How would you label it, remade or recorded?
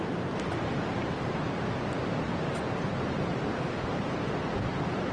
remade